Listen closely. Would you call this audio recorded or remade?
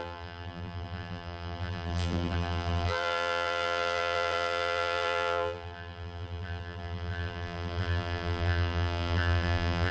remade